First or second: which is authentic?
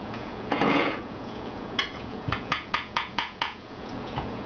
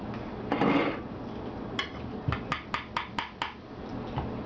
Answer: second